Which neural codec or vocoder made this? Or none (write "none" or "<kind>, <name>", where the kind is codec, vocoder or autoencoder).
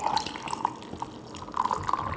none